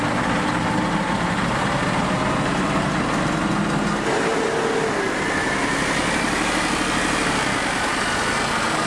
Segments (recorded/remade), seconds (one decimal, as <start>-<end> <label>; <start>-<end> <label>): 0.0-8.9 recorded